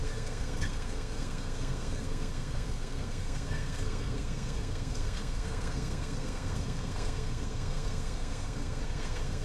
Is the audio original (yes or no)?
no